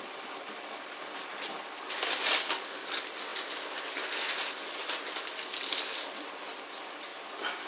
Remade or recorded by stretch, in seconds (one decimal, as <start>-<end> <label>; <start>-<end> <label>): 0.0-7.1 recorded; 7.1-7.7 remade